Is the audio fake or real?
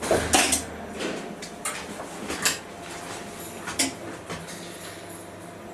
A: real